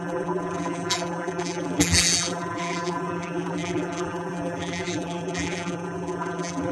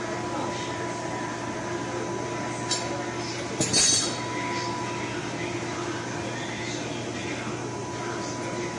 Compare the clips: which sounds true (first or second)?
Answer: second